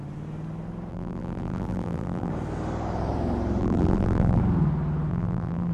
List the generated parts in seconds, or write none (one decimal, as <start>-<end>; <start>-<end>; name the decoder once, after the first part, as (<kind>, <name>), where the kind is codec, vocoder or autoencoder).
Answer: 0.9-2.3 (vocoder, BigVGAN v2); 3.6-4.4; 5.1-5.7